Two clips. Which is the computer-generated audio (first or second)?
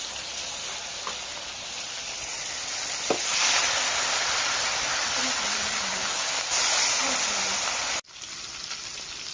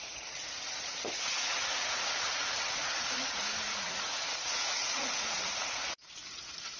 second